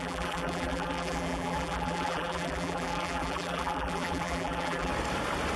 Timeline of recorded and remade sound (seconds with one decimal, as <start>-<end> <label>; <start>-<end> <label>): 0.0-4.9 remade; 4.9-5.6 recorded